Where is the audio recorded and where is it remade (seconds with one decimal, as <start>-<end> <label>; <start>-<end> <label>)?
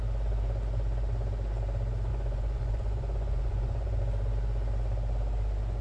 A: 0.0-2.1 recorded; 2.1-4.0 remade; 4.0-5.8 recorded